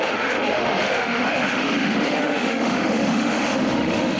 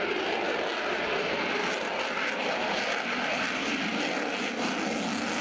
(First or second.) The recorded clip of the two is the second